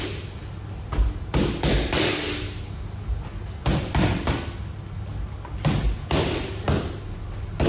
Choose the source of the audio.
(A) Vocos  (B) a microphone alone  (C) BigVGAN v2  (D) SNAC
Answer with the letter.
B